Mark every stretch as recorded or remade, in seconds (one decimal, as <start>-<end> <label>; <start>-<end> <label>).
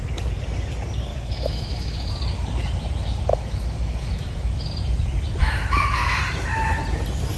0.0-1.1 recorded; 1.1-2.1 remade; 2.1-3.3 recorded; 3.3-4.6 remade; 4.6-5.4 recorded; 5.4-6.2 remade; 6.2-7.4 recorded